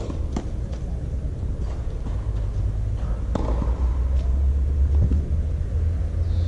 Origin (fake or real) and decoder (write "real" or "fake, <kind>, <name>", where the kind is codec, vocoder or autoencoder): real